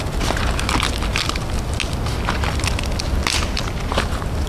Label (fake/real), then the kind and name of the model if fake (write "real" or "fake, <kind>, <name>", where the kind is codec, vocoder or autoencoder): real